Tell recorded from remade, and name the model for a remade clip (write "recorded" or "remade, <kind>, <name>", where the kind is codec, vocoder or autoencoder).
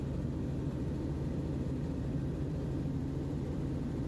recorded